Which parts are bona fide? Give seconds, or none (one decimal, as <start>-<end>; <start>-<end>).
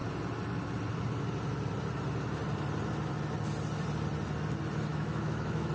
0.0-4.9